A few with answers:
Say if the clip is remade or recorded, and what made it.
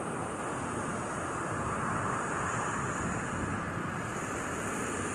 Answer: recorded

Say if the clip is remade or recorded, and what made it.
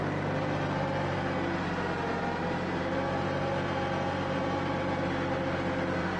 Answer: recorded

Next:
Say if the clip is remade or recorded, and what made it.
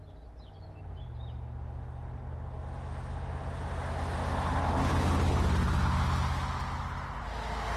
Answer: recorded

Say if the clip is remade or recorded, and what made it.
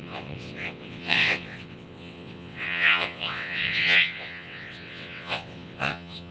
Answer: remade, vocoder, WaveNeXt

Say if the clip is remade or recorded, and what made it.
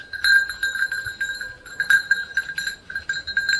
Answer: recorded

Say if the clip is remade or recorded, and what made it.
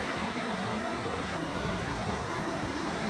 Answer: remade, codec, SNAC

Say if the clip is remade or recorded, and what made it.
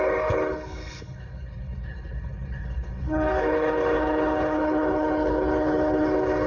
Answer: remade, codec, HILCodec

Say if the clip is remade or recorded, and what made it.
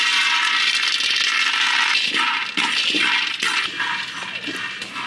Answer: recorded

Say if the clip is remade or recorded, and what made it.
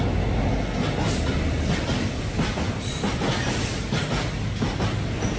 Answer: recorded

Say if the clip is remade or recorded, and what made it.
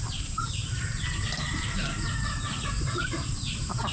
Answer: remade, vocoder, BigVGAN v2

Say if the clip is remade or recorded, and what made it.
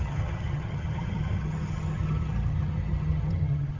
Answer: remade, vocoder, HiFi-GAN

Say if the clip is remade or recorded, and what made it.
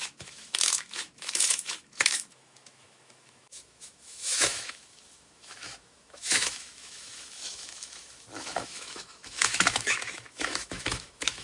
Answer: remade, autoencoder, DAC-VAE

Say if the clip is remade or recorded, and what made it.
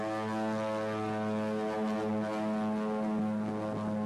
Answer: recorded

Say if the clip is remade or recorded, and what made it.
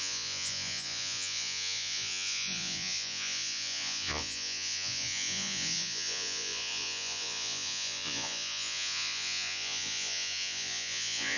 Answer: remade, vocoder, Vocos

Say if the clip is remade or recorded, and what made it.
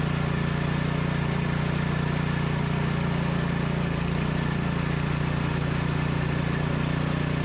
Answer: recorded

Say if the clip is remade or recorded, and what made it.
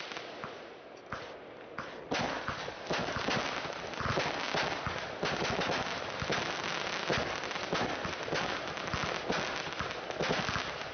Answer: recorded